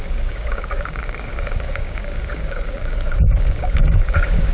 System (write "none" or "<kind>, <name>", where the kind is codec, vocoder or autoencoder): codec, DAC